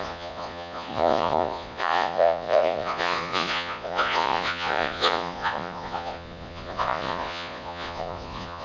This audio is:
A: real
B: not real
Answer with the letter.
B